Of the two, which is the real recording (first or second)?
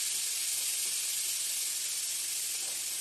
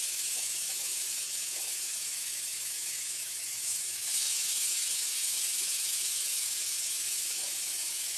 first